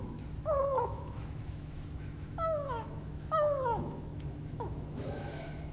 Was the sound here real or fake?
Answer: fake